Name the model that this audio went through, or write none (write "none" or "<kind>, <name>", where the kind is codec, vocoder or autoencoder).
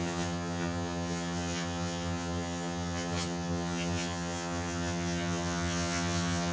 vocoder, HiFi-GAN